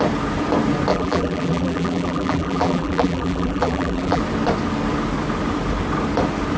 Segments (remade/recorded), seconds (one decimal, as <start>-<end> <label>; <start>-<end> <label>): 0.0-0.9 recorded; 0.9-4.2 remade; 4.2-6.6 recorded